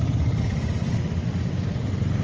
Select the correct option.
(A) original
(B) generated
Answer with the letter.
B